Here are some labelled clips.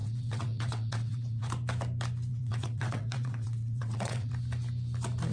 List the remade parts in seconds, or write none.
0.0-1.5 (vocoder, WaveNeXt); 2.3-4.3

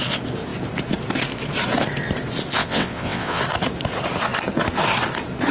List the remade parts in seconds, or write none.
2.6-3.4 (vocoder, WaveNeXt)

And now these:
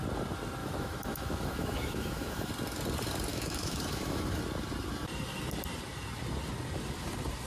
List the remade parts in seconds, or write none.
0.6-2.5 (autoencoder, DAC-VAE); 3.3-4.4

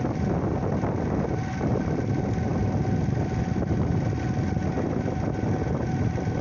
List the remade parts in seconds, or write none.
none

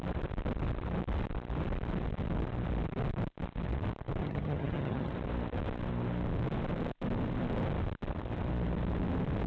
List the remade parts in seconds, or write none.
4.2-5.1 (vocoder, HiFi-GAN)

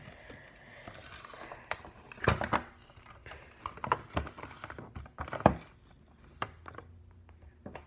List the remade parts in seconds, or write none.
none

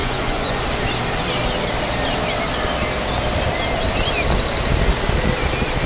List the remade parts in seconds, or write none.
0.0-0.6 (vocoder, Vocos)